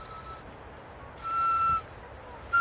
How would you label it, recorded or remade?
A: recorded